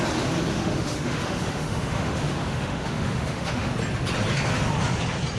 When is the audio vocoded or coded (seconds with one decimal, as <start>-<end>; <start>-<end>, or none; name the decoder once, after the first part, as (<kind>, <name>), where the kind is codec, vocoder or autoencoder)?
0.5-3.7 (autoencoder, DAC-VAE)